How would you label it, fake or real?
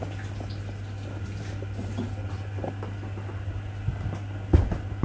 real